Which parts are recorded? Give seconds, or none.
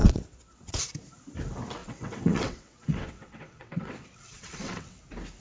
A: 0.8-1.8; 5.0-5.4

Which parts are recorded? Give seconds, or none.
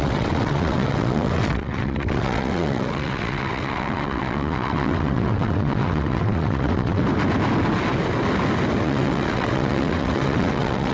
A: 7.0-8.8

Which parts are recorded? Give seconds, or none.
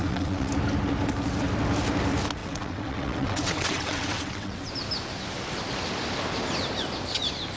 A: 0.5-2.4; 4.7-7.6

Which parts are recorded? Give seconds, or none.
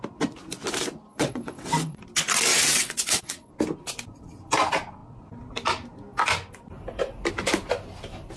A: 0.0-1.1; 2.0-2.5; 3.5-8.4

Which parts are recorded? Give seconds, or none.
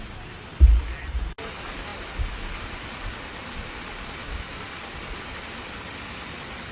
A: 0.0-6.7